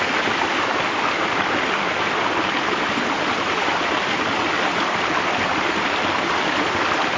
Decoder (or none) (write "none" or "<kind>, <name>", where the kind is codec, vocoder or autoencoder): none